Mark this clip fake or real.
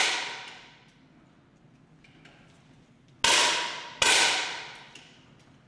real